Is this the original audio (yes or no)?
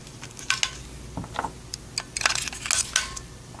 yes